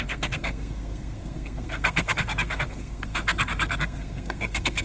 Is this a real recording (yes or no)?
no